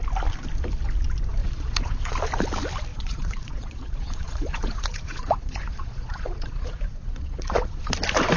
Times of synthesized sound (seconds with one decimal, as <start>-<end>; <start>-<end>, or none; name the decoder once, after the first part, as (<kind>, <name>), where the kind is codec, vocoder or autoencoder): 1.4-2.1 (vocoder, Vocos); 2.9-7.8